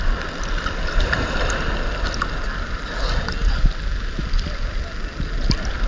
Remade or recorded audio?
recorded